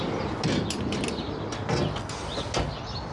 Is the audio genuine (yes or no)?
yes